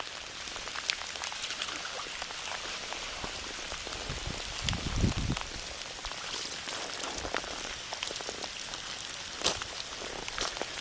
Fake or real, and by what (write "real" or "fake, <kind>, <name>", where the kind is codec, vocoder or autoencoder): real